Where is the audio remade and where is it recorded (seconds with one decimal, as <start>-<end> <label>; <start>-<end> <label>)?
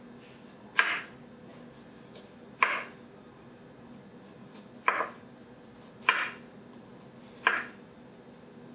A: 0.0-8.7 recorded